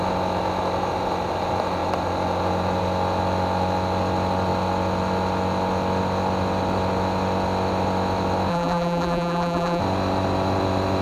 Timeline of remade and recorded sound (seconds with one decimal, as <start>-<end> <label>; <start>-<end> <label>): 0.0-8.5 recorded; 8.5-9.8 remade; 9.8-11.0 recorded